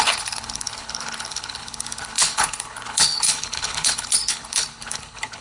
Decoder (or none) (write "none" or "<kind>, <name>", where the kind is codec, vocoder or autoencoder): codec, HILCodec